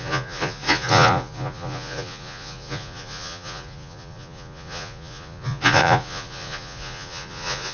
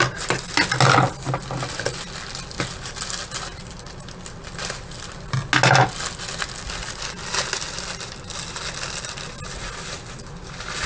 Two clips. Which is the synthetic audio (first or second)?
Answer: first